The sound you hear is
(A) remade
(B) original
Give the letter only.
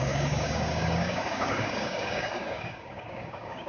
A